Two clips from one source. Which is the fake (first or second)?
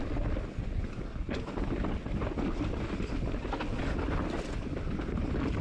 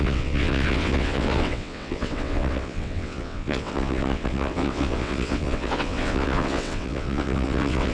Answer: second